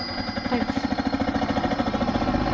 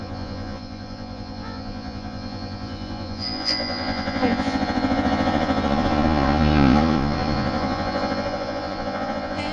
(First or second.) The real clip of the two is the first